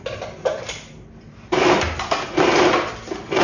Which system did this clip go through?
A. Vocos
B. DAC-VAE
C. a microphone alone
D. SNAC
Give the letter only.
C